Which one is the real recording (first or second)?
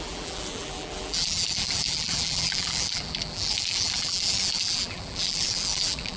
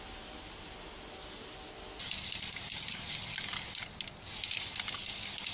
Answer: second